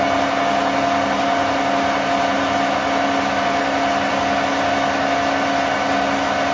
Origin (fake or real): real